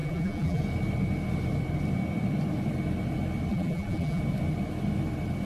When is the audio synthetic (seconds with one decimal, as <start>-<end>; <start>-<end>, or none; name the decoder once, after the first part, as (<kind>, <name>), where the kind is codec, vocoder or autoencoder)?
0.0-0.6 (vocoder, BigVGAN v2); 3.5-4.2